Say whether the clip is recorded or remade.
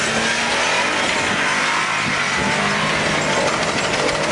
recorded